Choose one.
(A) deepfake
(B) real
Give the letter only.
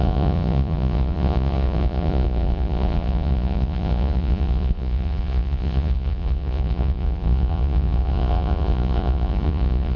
A